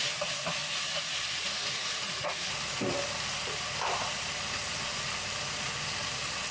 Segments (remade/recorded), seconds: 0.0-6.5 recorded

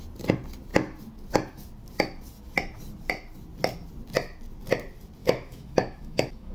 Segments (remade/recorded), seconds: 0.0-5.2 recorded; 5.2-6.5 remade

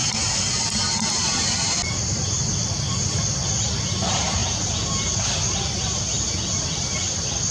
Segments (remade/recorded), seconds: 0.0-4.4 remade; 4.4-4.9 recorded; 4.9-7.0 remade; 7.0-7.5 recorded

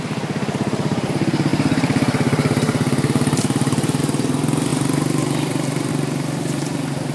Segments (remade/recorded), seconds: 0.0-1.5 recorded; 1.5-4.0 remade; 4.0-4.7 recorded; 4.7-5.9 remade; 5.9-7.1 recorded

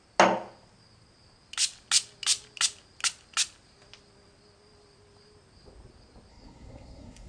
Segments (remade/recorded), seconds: 0.0-6.3 recorded; 6.3-7.3 remade

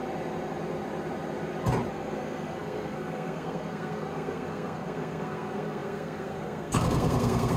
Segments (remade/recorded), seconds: 0.0-1.9 recorded; 1.9-7.6 remade

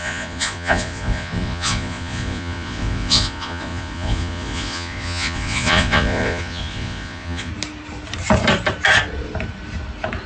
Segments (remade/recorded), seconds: 0.0-7.5 remade; 7.5-10.3 recorded